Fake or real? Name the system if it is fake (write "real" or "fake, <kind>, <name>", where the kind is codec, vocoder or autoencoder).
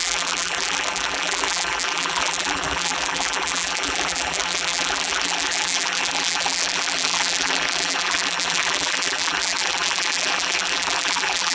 fake, vocoder, BigVGAN v2